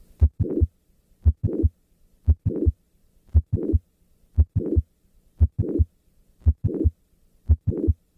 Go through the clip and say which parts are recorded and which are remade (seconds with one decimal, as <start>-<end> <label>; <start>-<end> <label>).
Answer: 0.0-8.2 remade